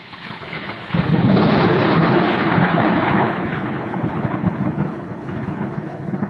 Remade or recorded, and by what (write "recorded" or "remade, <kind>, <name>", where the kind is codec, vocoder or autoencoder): remade, codec, HILCodec